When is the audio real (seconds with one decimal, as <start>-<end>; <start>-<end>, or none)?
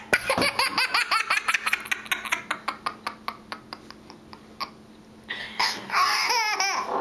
0.0-5.4; 6.3-7.0